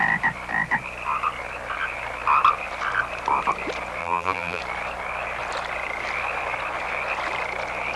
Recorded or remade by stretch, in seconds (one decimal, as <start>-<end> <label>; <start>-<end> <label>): 0.0-4.0 recorded; 4.0-4.6 remade; 4.6-8.0 recorded

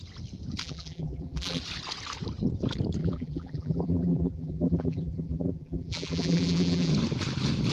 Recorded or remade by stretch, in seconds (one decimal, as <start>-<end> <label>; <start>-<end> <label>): 0.0-0.6 recorded; 0.6-1.6 remade; 1.6-3.0 recorded; 3.0-6.9 remade; 6.9-7.7 recorded